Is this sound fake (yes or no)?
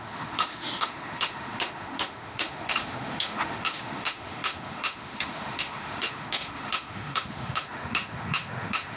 yes